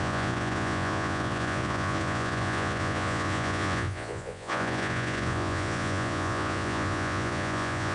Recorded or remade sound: remade